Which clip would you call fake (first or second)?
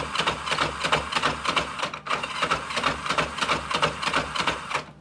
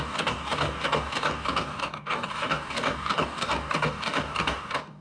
second